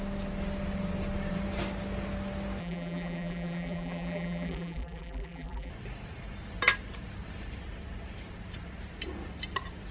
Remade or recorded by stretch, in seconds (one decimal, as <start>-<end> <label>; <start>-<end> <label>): 0.0-2.6 recorded; 2.6-5.7 remade; 5.7-9.9 recorded